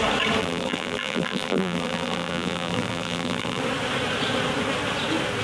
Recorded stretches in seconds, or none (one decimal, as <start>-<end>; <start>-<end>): 0.0-0.4; 3.6-5.4